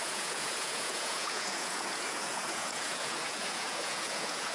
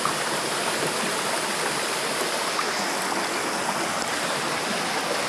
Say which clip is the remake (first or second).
first